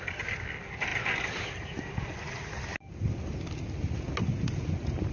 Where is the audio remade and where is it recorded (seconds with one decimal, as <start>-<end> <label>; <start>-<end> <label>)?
0.0-5.1 recorded